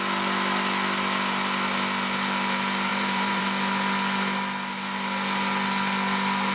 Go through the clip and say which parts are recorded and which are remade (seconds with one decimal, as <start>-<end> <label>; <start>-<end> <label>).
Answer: 0.0-2.9 recorded; 2.9-3.4 remade; 3.4-6.5 recorded